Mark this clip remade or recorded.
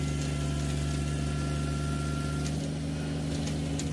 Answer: recorded